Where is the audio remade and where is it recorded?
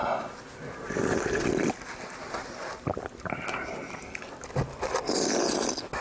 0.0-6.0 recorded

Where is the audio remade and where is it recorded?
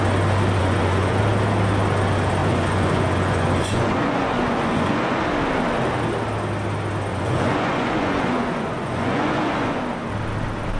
0.0-0.6 recorded; 0.6-1.2 remade; 1.2-2.4 recorded; 2.4-5.2 remade; 5.2-7.1 recorded; 7.1-9.8 remade; 9.8-10.8 recorded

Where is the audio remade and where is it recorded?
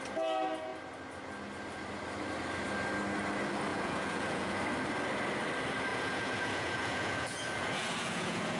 0.0-3.7 recorded; 3.7-4.6 remade; 4.6-5.9 recorded; 5.9-8.6 remade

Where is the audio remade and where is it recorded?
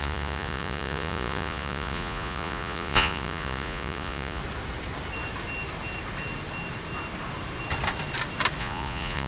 0.0-4.4 remade; 4.4-8.6 recorded; 8.6-9.3 remade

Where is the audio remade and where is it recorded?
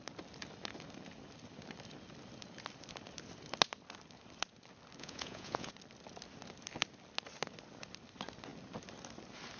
0.0-5.0 recorded; 5.0-5.7 remade; 5.7-9.6 recorded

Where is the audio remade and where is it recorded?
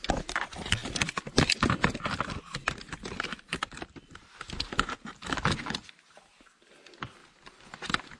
0.0-8.2 recorded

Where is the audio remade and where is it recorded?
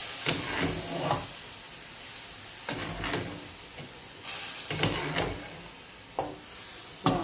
0.0-3.7 recorded; 3.7-4.3 remade; 4.3-7.2 recorded